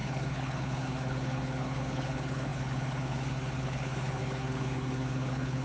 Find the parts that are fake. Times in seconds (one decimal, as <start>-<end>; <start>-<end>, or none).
0.0-5.6